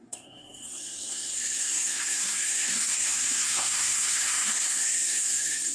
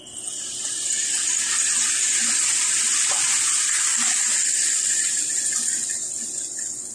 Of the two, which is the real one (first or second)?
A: second